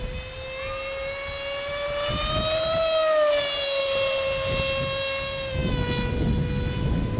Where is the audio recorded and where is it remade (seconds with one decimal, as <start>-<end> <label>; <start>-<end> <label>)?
0.0-7.2 recorded